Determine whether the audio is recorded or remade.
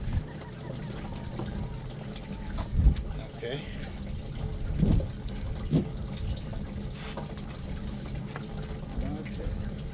recorded